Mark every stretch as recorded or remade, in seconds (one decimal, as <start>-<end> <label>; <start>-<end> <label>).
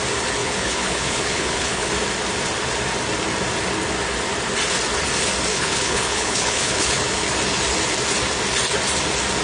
0.0-0.4 recorded; 0.4-1.9 remade; 1.9-5.5 recorded; 5.5-7.3 remade; 7.3-9.4 recorded